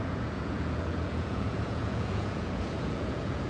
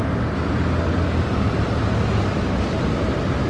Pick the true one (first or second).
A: second